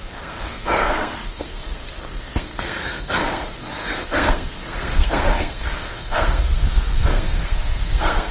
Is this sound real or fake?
fake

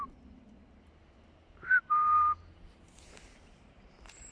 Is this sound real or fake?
real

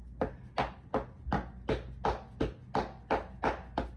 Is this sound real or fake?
real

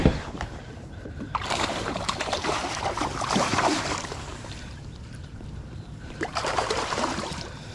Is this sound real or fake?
fake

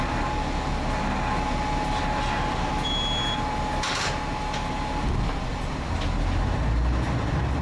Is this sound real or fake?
real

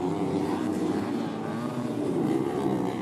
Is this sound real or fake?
fake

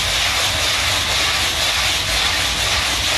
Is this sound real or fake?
real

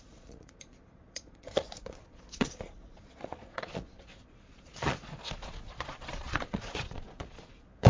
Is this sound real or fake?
fake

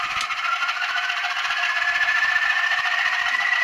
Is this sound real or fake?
real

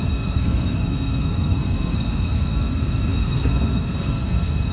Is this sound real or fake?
fake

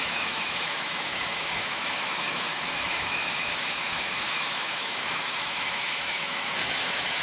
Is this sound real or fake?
fake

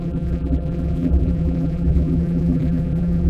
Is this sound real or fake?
fake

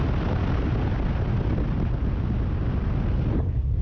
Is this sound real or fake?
real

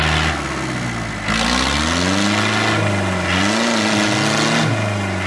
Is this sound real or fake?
real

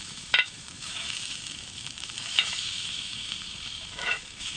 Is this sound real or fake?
fake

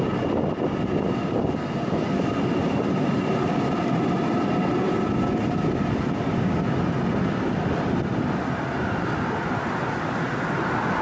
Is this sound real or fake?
real